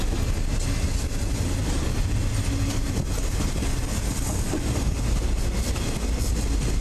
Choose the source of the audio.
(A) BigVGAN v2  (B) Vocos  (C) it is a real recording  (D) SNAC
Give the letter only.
C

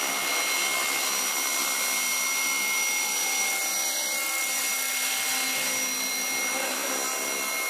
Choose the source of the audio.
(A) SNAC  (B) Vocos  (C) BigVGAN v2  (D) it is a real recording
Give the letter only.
D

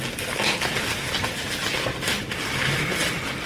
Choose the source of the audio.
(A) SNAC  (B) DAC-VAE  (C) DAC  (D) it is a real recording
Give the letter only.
D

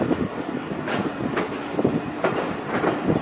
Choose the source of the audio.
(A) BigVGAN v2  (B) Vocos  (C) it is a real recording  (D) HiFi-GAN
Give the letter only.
C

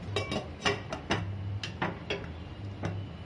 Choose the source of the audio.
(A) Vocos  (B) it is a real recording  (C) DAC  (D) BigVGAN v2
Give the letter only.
B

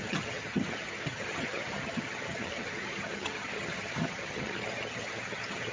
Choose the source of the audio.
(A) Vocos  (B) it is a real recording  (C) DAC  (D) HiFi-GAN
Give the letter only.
D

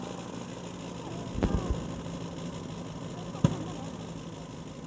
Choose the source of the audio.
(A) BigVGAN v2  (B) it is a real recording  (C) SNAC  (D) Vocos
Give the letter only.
B